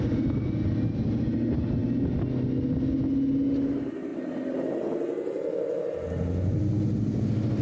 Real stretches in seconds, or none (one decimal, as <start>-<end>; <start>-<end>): 0.0-7.6